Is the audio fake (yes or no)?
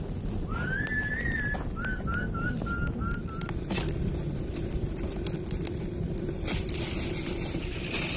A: no